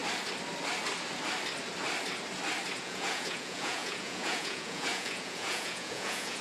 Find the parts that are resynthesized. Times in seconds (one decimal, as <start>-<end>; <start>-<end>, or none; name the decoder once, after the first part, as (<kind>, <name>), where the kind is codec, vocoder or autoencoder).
2.8-6.4 (vocoder, Vocos)